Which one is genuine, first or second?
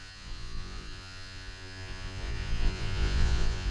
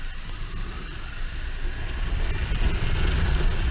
second